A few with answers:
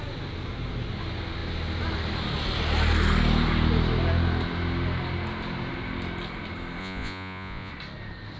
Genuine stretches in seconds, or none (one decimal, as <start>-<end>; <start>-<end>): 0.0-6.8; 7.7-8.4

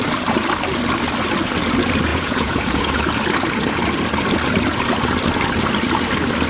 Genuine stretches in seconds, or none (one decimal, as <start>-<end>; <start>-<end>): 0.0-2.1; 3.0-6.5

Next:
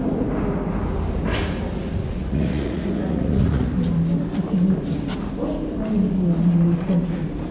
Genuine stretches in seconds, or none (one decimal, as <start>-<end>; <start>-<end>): 0.0-2.0; 3.7-7.5

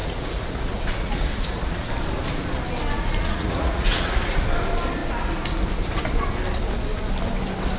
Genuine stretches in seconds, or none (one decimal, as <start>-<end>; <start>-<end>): 1.9-3.2; 4.4-7.8

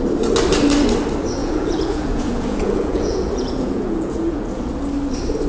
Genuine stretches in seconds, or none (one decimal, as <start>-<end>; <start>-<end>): 0.0-1.4; 4.7-5.5